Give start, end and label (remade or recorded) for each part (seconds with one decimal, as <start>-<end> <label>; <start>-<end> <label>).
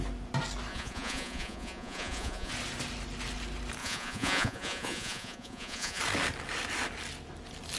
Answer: 0.0-0.7 recorded; 0.7-2.5 remade; 2.5-3.8 recorded; 3.8-6.0 remade; 6.0-7.8 recorded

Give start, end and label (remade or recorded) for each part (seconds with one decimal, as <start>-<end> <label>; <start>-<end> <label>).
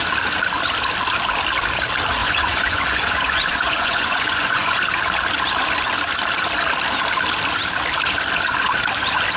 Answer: 0.0-2.2 recorded; 2.2-4.8 remade; 4.8-9.4 recorded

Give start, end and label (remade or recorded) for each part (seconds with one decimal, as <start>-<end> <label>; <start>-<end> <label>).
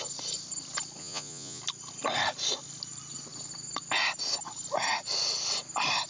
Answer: 0.0-1.0 recorded; 1.0-1.6 remade; 1.6-6.1 recorded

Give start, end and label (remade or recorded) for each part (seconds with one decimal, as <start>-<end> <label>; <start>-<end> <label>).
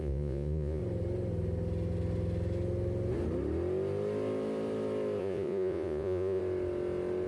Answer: 0.0-0.8 remade; 0.8-5.2 recorded; 5.2-6.4 remade; 6.4-7.3 recorded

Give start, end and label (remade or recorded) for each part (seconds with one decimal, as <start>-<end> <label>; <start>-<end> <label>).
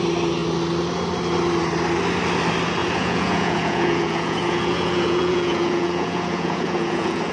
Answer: 0.0-2.8 recorded; 2.8-7.3 remade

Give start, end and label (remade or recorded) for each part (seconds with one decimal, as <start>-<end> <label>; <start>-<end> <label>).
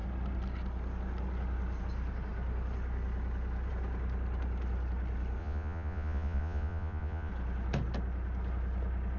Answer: 0.0-5.4 recorded; 5.4-7.3 remade; 7.3-9.2 recorded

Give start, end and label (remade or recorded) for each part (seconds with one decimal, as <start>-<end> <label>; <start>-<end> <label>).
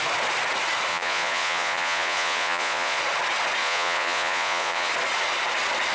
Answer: 0.0-0.9 recorded; 0.9-3.0 remade; 3.0-3.6 recorded; 3.6-4.9 remade; 4.9-5.9 recorded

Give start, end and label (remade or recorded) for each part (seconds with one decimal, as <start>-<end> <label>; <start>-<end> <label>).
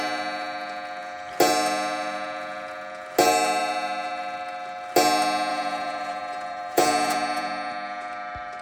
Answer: 0.0-5.5 recorded; 5.5-7.7 remade; 7.7-8.6 recorded